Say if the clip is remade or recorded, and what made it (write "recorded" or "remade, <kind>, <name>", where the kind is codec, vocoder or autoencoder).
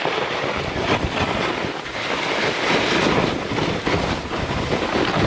recorded